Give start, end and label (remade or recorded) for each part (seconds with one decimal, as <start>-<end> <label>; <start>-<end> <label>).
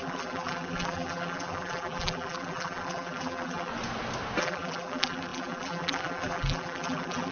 0.0-3.7 remade; 3.7-4.4 recorded; 4.4-7.3 remade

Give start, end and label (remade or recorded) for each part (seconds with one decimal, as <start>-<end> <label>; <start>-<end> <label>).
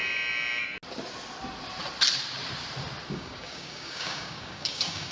0.0-3.1 recorded; 3.1-5.1 remade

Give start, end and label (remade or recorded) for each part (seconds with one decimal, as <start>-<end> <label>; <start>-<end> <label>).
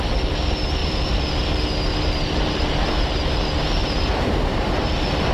0.0-0.8 recorded; 0.8-1.4 remade; 1.4-1.9 recorded; 1.9-3.0 remade; 3.0-3.8 recorded; 3.8-5.3 remade